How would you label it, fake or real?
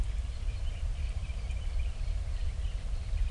fake